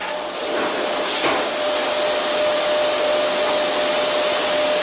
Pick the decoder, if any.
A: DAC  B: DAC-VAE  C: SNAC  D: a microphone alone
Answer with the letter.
D